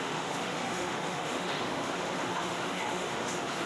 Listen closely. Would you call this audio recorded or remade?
remade